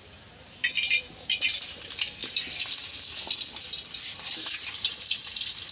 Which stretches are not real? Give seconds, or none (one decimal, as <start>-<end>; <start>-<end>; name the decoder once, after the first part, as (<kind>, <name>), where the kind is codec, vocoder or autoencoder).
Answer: none